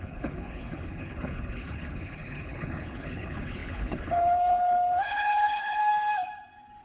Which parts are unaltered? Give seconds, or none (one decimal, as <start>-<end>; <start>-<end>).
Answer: 5.8-6.8